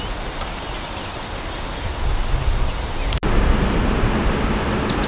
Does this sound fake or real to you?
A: real